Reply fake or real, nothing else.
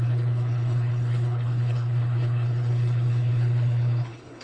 fake